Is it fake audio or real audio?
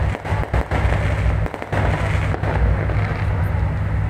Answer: real